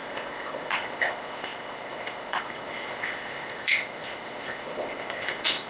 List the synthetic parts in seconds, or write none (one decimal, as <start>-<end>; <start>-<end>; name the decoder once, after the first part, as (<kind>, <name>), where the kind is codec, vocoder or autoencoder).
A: 0.0-5.7 (codec, ZipCodec)